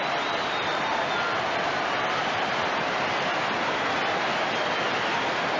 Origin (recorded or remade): recorded